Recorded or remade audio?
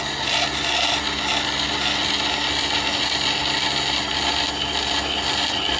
recorded